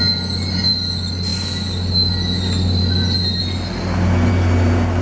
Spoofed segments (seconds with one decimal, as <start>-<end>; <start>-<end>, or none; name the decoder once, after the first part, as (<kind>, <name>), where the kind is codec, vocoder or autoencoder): none